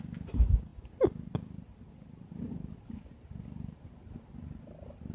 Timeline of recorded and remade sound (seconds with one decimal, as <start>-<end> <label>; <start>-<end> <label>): 0.0-5.1 recorded